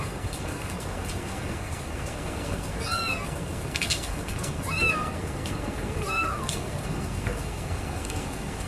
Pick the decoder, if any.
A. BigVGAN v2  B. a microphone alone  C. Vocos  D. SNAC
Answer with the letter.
D